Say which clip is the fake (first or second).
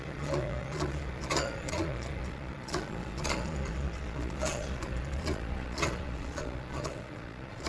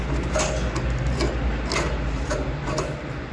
first